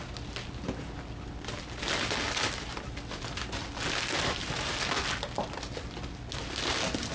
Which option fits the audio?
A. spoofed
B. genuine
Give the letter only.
B